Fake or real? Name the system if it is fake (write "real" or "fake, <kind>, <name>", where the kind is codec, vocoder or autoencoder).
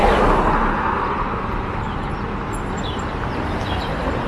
real